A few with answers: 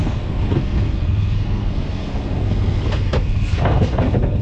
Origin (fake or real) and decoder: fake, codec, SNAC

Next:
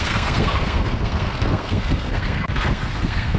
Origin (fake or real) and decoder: fake, codec, SNAC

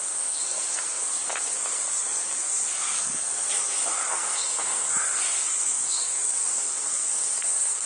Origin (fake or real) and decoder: fake, codec, SNAC